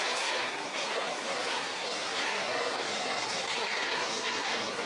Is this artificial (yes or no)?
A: yes